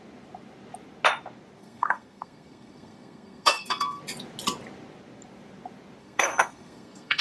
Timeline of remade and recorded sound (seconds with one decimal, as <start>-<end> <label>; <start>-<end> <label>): 0.0-1.6 recorded; 1.6-4.0 remade; 4.0-6.0 recorded; 6.0-7.2 remade